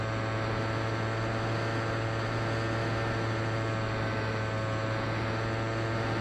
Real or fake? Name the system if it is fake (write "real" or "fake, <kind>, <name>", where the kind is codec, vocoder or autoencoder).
real